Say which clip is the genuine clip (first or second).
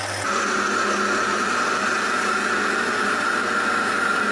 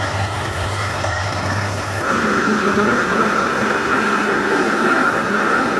first